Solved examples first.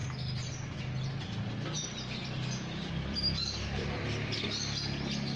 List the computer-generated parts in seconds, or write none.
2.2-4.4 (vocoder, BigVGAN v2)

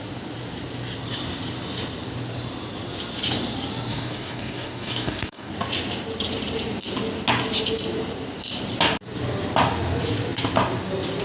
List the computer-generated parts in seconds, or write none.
3.9-5.5 (codec, DAC)

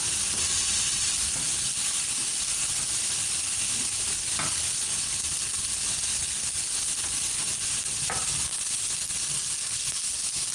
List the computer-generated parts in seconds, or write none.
none

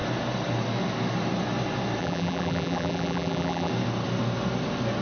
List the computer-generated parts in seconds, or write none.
2.0-3.7 (vocoder, BigVGAN v2)

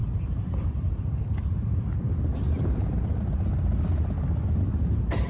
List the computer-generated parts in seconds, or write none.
0.0-3.2 (vocoder, BigVGAN v2); 4.7-5.3